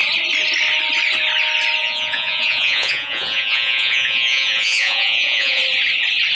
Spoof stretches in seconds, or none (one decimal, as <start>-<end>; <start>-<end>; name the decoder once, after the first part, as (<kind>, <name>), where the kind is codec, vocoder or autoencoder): 1.8-5.6 (vocoder, Vocos)